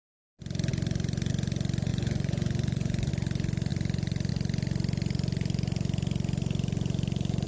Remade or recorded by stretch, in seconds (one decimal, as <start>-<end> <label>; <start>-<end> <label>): 0.0-1.9 recorded; 1.9-3.1 remade; 3.1-7.5 recorded